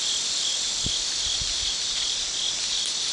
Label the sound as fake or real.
real